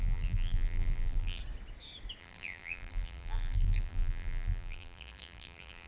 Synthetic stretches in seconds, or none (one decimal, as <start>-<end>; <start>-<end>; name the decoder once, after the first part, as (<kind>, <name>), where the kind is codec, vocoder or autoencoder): 0.0-1.4 (vocoder, BigVGAN v2); 2.2-5.9